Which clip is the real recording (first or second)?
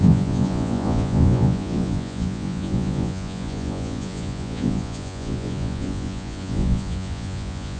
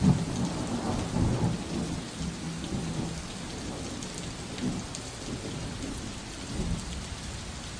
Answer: second